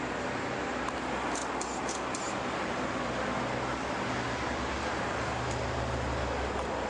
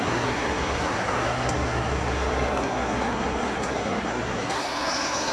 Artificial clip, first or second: second